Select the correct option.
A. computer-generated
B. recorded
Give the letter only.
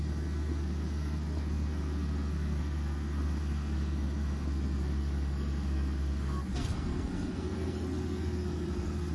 A